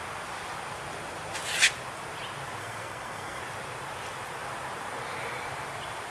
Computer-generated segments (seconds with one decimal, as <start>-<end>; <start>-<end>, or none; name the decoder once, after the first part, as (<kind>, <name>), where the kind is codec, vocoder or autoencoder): 2.6-3.4 (codec, SNAC)